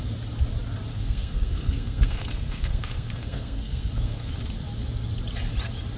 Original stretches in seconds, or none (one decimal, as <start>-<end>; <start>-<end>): 0.0-0.9; 4.3-6.0